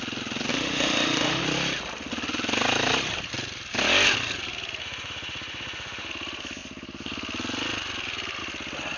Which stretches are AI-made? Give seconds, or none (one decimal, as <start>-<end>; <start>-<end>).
0.5-1.4; 4.8-6.1